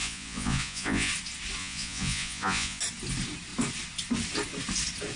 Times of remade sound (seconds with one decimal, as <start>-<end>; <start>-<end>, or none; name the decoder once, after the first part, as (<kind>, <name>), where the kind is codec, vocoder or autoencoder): 0.0-1.1 (vocoder, Vocos); 1.6-2.8